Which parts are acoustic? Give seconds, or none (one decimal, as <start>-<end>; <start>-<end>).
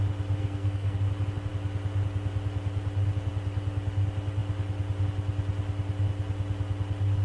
0.0-0.4; 1.0-7.2